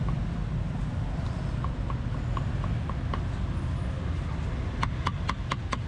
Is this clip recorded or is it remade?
recorded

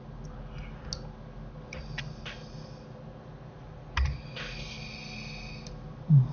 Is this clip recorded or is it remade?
recorded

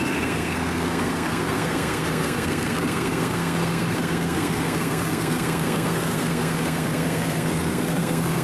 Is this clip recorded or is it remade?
remade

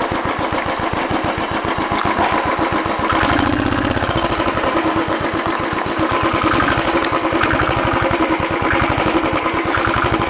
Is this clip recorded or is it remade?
recorded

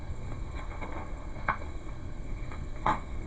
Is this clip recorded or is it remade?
remade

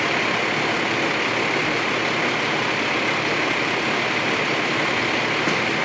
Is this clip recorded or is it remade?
recorded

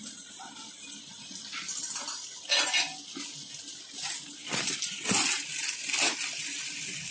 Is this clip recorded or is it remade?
recorded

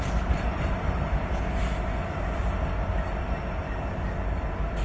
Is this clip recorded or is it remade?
recorded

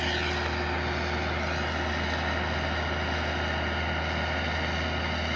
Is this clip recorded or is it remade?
recorded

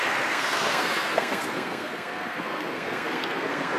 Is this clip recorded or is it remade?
remade